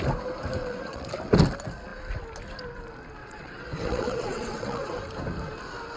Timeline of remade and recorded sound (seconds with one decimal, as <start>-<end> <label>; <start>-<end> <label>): 0.0-0.6 recorded; 0.6-1.1 remade; 1.1-3.2 recorded; 3.2-5.0 remade; 5.0-6.0 recorded